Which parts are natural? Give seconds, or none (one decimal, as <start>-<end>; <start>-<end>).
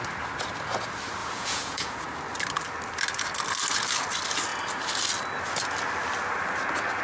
0.0-1.2; 2.0-7.0